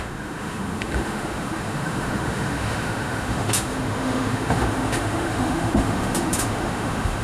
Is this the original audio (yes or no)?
no